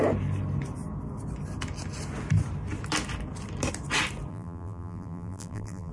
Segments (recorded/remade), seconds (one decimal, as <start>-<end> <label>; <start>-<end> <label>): 0.0-4.3 recorded; 4.3-5.9 remade

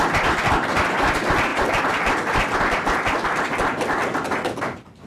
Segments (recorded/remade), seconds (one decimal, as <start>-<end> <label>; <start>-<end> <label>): 0.0-5.1 recorded

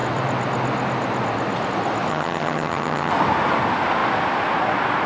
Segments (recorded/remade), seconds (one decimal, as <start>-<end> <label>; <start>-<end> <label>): 0.0-2.1 recorded; 2.1-3.1 remade; 3.1-5.1 recorded

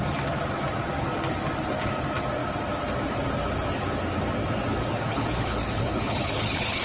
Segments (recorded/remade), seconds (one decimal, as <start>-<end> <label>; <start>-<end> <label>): 0.0-5.1 recorded; 5.1-6.8 remade

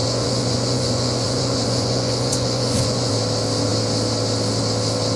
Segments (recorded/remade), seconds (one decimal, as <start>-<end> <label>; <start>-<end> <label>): 0.0-3.1 remade; 3.1-5.2 recorded

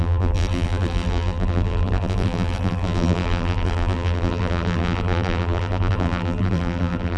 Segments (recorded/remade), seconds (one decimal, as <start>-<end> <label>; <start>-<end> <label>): 0.0-7.2 remade

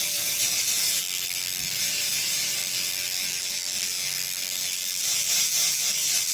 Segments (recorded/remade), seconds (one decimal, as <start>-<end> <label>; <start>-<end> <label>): 0.0-1.0 remade; 1.0-1.8 recorded; 1.8-2.6 remade; 2.6-5.0 recorded; 5.0-6.3 remade